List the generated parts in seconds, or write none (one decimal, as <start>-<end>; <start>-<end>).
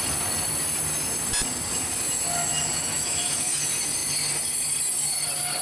2.9-3.6